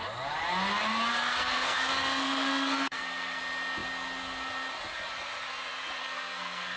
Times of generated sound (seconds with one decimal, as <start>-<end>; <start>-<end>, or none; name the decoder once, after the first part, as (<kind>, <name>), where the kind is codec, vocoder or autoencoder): 1.1-3.4 (codec, SNAC); 6.0-6.8